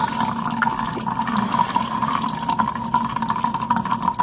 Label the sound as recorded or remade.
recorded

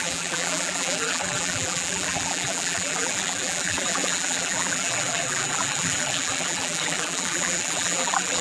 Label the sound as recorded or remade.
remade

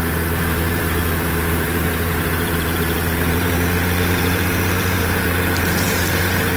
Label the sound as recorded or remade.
remade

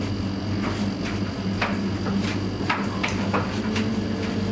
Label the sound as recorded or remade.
recorded